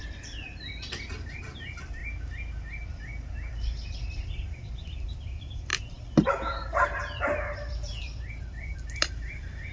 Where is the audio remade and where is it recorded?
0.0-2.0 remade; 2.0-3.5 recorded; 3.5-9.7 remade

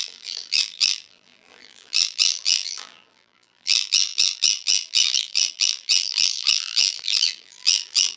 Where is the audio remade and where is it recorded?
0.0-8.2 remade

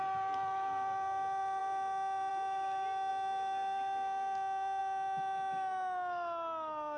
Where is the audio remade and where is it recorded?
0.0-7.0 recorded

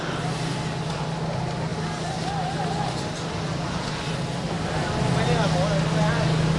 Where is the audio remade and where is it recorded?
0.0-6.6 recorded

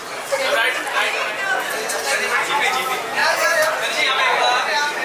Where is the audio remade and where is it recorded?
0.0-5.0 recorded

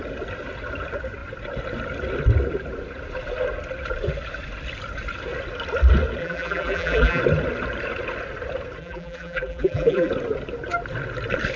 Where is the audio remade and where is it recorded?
0.0-6.2 recorded; 6.2-7.2 remade; 7.2-8.8 recorded; 8.8-10.1 remade; 10.1-11.6 recorded